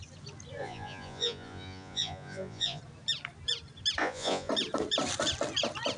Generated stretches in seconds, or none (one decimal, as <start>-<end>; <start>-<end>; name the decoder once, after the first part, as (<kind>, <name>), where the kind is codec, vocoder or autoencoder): 0.6-2.8 (vocoder, Vocos); 4.0-4.5